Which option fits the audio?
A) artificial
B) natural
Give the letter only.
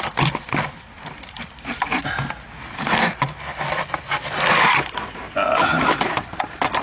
B